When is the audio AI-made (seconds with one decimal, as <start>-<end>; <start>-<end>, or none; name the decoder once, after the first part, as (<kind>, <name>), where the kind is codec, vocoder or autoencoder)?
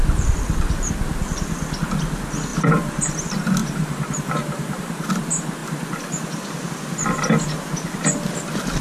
2.5-3.2 (vocoder, BigVGAN v2); 3.6-5.1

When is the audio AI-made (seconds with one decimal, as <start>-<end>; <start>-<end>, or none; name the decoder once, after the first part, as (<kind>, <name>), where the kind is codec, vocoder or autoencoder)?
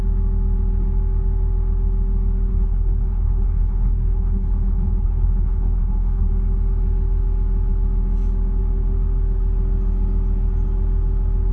2.5-6.3 (codec, HILCodec)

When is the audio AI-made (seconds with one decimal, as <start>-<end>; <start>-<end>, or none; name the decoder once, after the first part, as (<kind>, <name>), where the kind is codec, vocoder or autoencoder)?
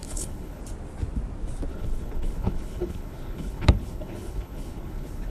0.0-0.6 (codec, HILCodec); 1.7-5.3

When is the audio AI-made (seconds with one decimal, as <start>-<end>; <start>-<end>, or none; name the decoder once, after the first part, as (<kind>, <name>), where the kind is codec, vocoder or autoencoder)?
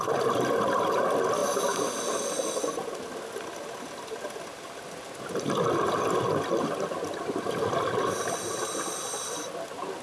none